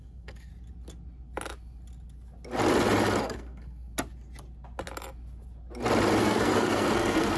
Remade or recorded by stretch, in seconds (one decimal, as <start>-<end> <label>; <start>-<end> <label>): 0.0-0.5 remade; 0.5-3.2 recorded; 3.2-3.9 remade; 3.9-6.2 recorded; 6.2-7.4 remade